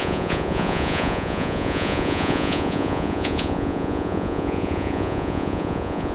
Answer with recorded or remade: remade